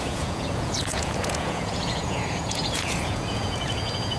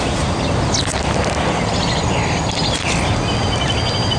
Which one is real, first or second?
second